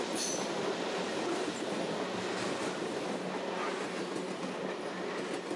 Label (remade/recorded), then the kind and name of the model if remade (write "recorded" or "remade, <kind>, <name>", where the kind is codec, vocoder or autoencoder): recorded